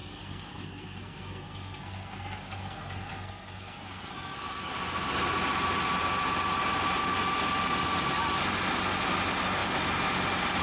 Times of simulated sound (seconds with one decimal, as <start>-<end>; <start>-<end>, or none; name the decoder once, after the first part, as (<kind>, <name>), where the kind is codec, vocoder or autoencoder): 0.0-4.7 (codec, SNAC)